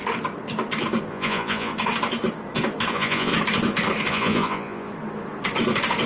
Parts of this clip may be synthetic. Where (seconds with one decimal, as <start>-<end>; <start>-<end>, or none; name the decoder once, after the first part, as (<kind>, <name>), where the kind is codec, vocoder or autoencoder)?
1.1-1.7 (vocoder, Vocos); 2.9-3.3; 4.1-4.9